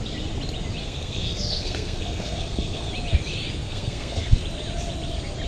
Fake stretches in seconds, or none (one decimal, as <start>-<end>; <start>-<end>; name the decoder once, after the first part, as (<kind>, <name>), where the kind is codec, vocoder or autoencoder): 0.8-2.9 (codec, SNAC); 3.6-4.4